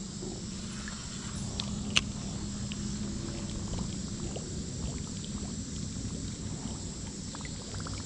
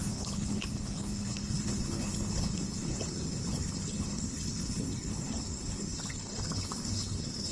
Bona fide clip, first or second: first